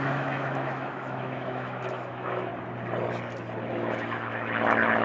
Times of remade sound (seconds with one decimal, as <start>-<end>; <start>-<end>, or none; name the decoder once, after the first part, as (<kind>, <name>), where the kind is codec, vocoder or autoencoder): 0.0-2.5 (autoencoder, DAC-VAE); 3.7-5.0